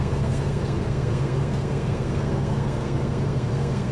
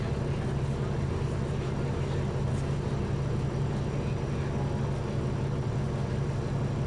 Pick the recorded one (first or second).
second